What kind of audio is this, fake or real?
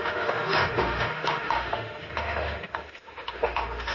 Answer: fake